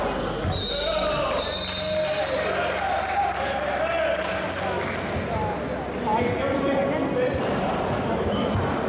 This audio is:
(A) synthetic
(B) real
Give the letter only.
B